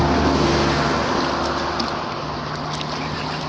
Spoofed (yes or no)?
no